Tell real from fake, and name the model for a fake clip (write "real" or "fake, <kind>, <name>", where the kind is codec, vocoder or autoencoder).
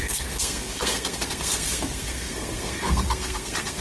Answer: fake, codec, SNAC